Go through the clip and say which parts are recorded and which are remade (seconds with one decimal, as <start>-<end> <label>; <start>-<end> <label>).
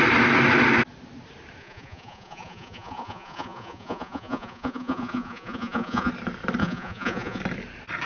0.0-1.6 recorded; 1.6-6.1 remade; 6.1-6.6 recorded; 6.6-7.4 remade; 7.4-8.1 recorded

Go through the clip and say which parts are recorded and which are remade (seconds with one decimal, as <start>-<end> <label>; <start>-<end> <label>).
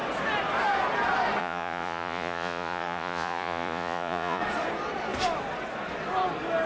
0.0-1.4 recorded; 1.4-4.4 remade; 4.4-6.7 recorded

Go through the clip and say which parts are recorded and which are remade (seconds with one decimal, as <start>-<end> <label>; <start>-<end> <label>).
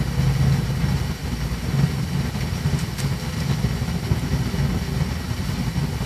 0.0-6.1 recorded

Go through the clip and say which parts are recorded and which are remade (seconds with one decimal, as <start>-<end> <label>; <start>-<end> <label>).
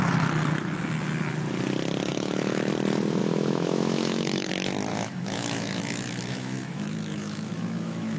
0.0-2.1 recorded; 2.1-2.7 remade; 2.7-3.2 recorded; 3.2-4.5 remade; 4.5-4.9 recorded; 4.9-8.2 remade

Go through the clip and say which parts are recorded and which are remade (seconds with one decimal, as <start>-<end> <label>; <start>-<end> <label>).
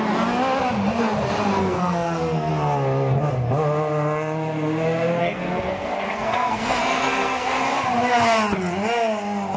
0.0-1.6 recorded; 1.6-2.5 remade; 2.5-5.2 recorded; 5.2-7.6 remade; 7.6-9.6 recorded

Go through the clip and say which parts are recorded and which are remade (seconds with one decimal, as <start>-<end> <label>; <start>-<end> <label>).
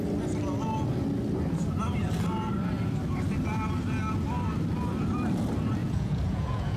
0.0-5.8 recorded; 5.8-6.8 remade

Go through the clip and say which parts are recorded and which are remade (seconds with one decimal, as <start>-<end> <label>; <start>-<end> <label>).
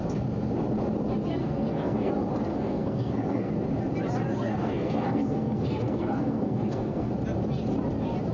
0.0-1.4 recorded; 1.4-2.1 remade; 2.1-2.5 recorded; 2.5-3.5 remade; 3.5-4.3 recorded; 4.3-7.1 remade; 7.1-8.3 recorded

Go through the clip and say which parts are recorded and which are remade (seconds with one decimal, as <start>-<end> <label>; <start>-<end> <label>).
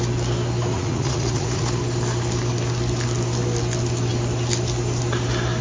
0.0-0.7 recorded; 0.7-1.8 remade; 1.8-5.6 recorded